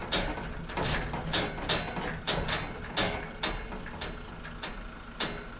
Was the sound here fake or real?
real